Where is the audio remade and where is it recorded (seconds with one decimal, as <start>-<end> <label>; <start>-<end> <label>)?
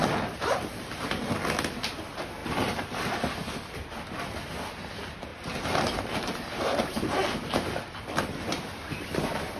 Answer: 0.0-1.0 remade; 1.0-2.4 recorded; 2.4-3.0 remade; 3.0-5.3 recorded; 5.3-9.6 remade